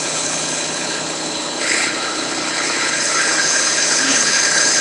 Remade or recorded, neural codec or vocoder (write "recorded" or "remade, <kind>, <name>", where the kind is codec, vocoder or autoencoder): remade, codec, HILCodec